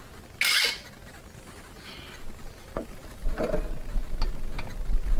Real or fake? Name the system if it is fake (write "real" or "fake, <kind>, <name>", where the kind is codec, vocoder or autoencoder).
real